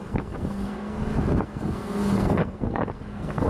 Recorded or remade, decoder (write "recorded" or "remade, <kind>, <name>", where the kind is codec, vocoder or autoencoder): remade, codec, SNAC